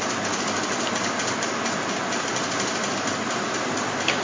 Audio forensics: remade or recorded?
recorded